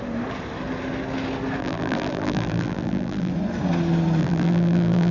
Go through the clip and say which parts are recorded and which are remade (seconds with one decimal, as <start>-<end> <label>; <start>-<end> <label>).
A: 0.0-1.6 recorded; 1.6-3.3 remade; 3.3-4.2 recorded; 4.2-5.1 remade